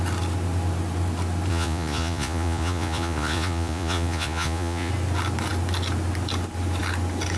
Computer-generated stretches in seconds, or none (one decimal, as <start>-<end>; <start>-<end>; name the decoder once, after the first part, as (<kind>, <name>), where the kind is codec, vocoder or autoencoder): 1.5-4.9 (vocoder, Vocos)